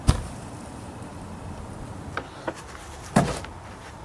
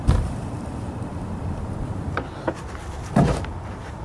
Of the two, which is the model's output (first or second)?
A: second